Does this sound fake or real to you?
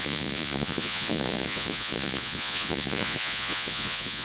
fake